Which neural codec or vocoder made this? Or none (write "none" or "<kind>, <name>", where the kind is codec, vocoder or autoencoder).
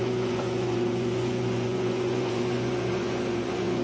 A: vocoder, Vocos